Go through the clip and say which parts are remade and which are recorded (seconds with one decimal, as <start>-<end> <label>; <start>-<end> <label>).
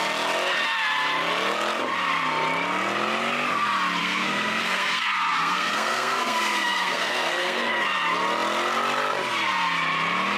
0.0-4.0 recorded; 4.0-7.7 remade; 7.7-10.4 recorded